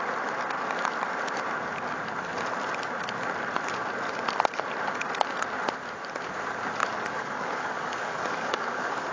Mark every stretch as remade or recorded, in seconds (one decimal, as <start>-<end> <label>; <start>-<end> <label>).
0.0-6.8 recorded; 6.8-9.1 remade

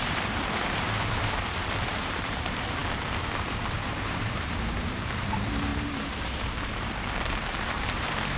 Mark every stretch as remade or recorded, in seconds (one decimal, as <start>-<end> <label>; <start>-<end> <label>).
0.0-8.4 remade

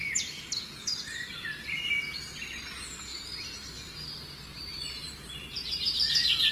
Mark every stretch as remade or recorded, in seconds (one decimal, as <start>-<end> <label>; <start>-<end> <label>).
0.0-3.1 recorded; 3.1-6.5 remade

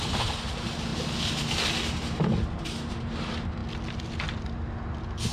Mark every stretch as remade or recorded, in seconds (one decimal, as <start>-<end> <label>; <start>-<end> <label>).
0.0-5.3 recorded

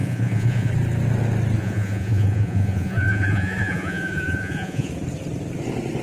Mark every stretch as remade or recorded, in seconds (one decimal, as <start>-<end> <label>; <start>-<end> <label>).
0.0-0.7 remade; 0.7-1.6 recorded; 1.6-4.9 remade; 4.9-6.0 recorded

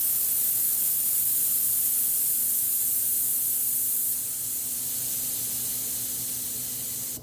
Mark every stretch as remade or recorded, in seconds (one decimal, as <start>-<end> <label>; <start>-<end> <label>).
0.0-7.2 recorded